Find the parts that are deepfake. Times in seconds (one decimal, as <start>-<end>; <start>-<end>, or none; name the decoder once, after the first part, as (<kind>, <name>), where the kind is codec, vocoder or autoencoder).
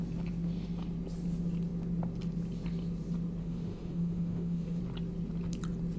3.4-4.8 (autoencoder, DAC-VAE)